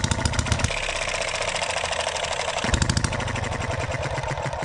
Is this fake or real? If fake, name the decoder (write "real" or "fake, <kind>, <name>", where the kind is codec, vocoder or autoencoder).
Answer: real